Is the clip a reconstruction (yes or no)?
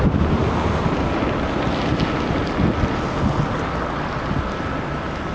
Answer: no